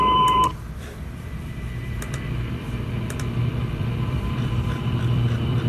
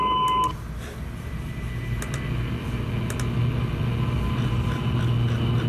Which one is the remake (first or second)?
first